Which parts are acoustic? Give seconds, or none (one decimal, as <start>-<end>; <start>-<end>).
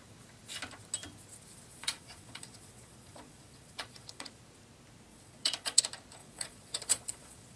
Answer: 0.0-1.7; 4.4-5.1; 5.8-6.2